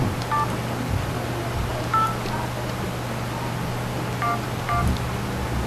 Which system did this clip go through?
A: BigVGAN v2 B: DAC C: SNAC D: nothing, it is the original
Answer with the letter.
D